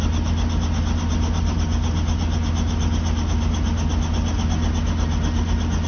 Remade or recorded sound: recorded